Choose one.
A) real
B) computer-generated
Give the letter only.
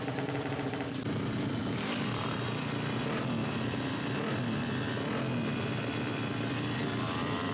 B